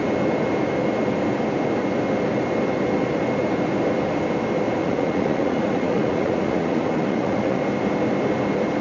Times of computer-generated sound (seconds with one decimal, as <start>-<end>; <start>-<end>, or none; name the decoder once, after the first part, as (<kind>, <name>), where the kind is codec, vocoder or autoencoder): 4.8-7.6 (vocoder, Vocos)